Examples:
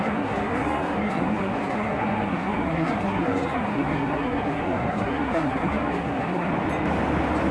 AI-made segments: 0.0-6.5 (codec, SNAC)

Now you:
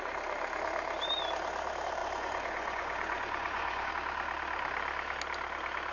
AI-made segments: 2.0-3.9 (vocoder, Vocos)

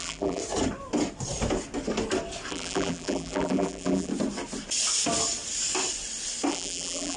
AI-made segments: 0.0-0.4 (vocoder, BigVGAN v2); 2.5-4.1; 6.5-7.2

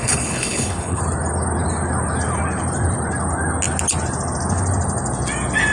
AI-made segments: 0.0-1.0 (codec, HILCodec)

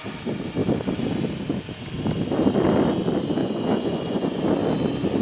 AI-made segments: 3.4-4.4 (vocoder, Vocos)

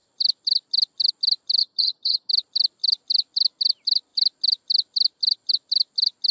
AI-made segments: 1.6-2.3 (vocoder, HiFi-GAN)